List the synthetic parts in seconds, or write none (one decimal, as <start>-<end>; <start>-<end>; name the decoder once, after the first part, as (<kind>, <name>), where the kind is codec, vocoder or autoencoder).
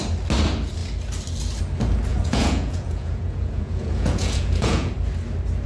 2.1-4.9 (vocoder, Vocos)